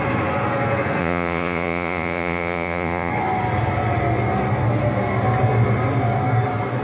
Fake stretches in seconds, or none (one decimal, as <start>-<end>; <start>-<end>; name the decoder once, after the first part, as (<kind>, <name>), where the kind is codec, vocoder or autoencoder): 1.0-3.1 (vocoder, Vocos)